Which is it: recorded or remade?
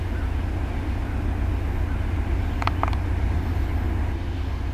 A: recorded